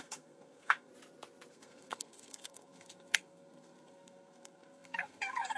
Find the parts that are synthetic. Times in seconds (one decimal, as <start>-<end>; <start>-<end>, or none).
0.0-0.9; 1.5-5.6